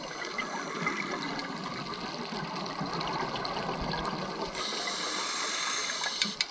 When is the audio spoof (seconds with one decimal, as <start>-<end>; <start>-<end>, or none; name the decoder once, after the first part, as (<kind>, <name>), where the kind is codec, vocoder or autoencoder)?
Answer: none